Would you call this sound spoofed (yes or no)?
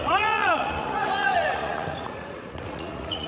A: yes